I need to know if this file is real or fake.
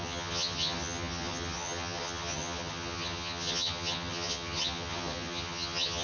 fake